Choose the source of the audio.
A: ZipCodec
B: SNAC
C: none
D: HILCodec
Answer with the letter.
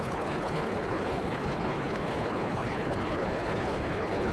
D